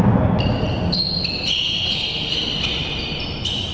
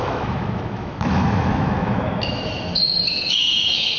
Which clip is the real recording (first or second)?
first